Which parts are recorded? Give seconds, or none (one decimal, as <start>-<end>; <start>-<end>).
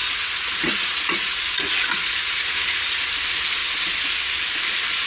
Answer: 3.1-5.1